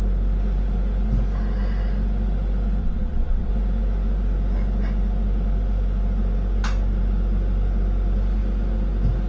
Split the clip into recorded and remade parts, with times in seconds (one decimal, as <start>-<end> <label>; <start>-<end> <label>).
0.0-2.8 recorded; 2.8-3.5 remade; 3.5-9.3 recorded